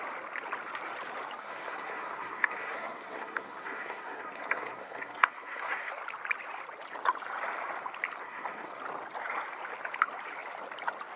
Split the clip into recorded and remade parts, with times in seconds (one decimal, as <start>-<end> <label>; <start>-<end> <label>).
0.0-1.4 recorded; 1.4-5.9 remade; 5.9-8.2 recorded; 8.2-8.8 remade; 8.8-11.2 recorded